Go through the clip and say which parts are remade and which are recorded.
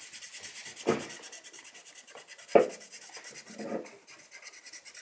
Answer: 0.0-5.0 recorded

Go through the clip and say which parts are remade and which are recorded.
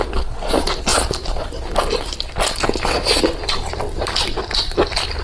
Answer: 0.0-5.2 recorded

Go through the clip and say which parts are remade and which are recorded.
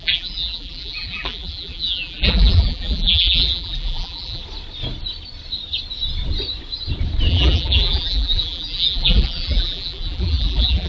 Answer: 0.0-4.4 remade; 4.4-7.3 recorded; 7.3-10.9 remade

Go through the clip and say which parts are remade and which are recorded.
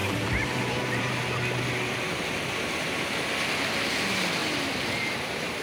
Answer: 0.0-1.2 remade; 1.2-4.4 recorded; 4.4-5.6 remade